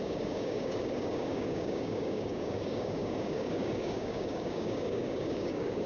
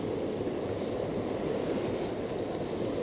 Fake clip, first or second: first